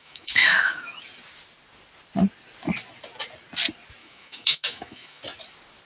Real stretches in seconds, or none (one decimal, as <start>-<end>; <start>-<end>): 1.0-4.0; 5.2-5.9